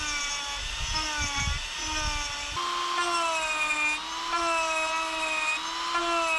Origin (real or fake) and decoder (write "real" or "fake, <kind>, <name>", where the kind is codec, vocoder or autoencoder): real